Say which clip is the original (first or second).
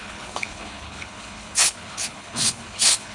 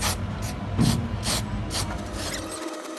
second